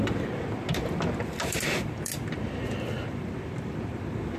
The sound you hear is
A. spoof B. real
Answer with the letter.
A